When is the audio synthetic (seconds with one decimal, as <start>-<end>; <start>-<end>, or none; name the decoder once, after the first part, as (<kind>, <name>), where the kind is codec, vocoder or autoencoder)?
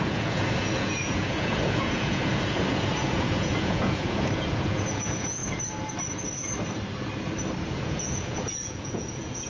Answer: 0.0-5.4 (vocoder, Vocos); 7.7-9.5